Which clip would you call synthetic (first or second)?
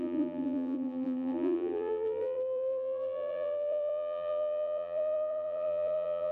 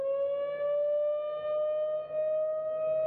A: first